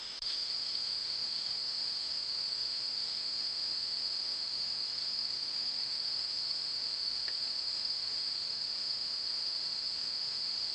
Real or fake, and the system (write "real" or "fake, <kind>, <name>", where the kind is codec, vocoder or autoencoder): fake, autoencoder, DAC-VAE